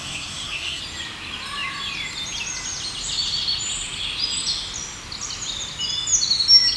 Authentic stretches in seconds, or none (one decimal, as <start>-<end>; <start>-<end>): 0.8-6.8